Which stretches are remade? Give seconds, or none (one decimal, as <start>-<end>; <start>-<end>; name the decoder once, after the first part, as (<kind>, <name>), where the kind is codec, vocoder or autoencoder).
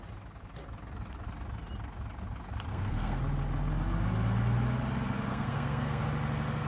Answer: 2.7-3.2 (codec, SNAC); 5.3-6.0